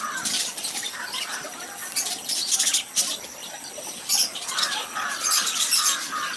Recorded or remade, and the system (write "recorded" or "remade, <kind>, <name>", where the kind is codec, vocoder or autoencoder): recorded